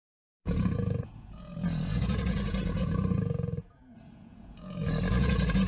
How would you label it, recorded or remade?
remade